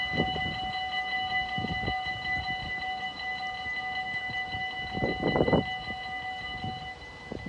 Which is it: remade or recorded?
recorded